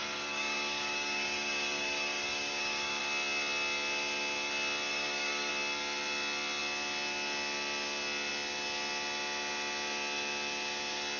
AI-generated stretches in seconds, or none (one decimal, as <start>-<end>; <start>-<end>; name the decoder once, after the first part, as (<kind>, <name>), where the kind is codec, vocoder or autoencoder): 0.0-3.0 (codec, DAC); 4.9-5.5